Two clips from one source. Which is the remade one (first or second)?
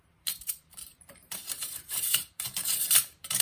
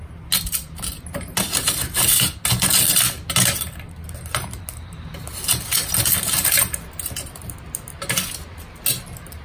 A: first